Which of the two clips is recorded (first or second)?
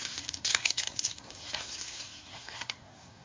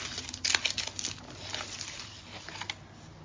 second